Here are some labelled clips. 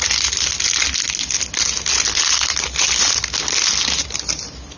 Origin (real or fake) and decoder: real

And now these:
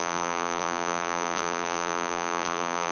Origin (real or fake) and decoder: fake, vocoder, BigVGAN v2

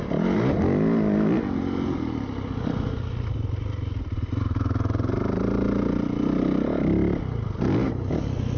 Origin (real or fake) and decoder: real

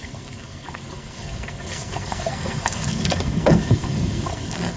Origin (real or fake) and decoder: fake, codec, SNAC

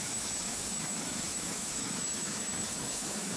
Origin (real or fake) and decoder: fake, autoencoder, DAC-VAE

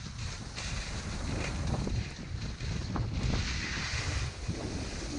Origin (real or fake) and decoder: real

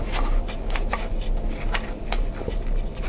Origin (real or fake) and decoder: real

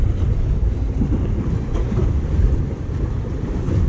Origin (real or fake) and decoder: real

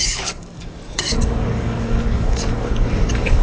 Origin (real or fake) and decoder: fake, codec, DAC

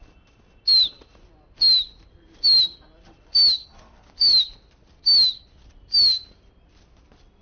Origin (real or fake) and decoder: real